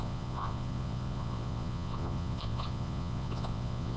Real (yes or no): no